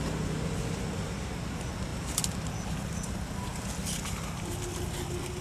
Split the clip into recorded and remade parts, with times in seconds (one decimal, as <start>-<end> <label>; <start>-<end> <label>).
0.0-5.4 recorded